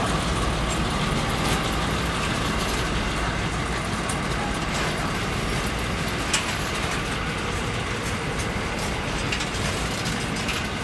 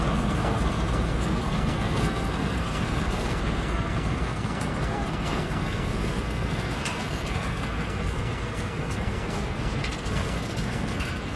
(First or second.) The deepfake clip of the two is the second